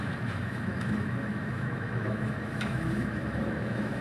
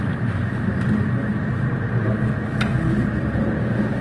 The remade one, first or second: first